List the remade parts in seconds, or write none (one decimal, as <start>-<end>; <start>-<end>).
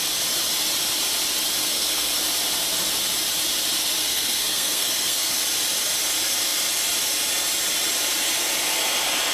1.6-2.1; 4.0-5.3